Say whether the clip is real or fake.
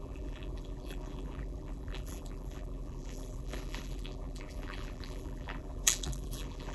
fake